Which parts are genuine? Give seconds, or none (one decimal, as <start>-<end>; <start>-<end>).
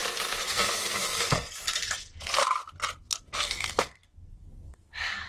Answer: 2.4-3.0